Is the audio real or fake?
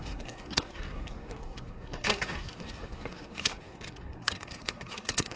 fake